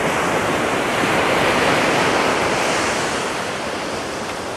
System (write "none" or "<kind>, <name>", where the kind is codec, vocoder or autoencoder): none